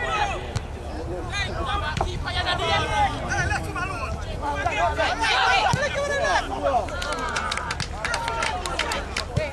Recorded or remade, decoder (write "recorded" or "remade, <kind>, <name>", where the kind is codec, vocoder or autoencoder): recorded